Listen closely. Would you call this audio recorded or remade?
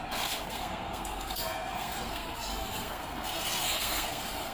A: remade